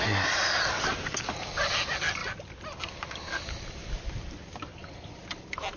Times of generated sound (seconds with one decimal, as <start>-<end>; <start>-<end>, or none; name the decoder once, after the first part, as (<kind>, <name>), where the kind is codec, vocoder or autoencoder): none